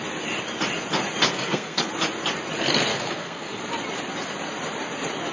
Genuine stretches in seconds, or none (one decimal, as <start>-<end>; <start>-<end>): 0.0-1.3; 1.8-2.9; 3.6-5.3